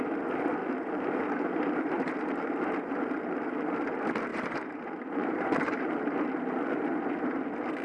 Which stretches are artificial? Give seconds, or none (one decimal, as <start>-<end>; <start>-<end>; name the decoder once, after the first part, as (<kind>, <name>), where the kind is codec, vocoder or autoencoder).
0.6-2.1 (vocoder, BigVGAN v2); 4.3-6.0